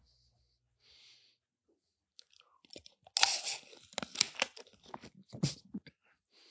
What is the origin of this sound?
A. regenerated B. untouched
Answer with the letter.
B